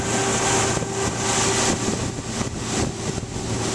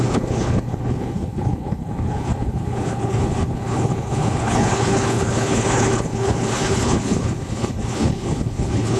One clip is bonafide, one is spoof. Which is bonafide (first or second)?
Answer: first